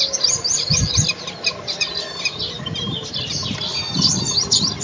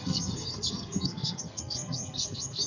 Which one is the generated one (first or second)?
second